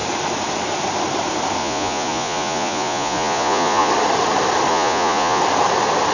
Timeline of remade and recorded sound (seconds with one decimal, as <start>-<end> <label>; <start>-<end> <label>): 0.0-1.6 recorded; 1.6-3.9 remade; 3.9-4.7 recorded; 4.7-5.4 remade; 5.4-6.1 recorded